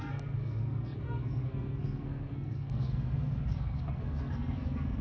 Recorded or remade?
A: remade